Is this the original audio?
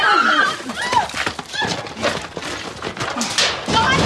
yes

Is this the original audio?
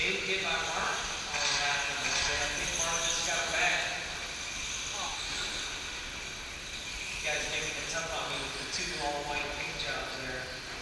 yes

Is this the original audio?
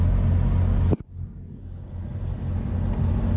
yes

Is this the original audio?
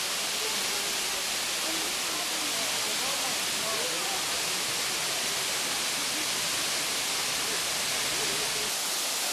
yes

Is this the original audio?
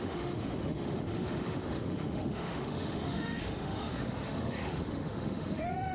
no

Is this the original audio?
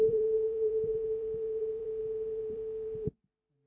no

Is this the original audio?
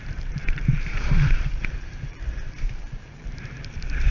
no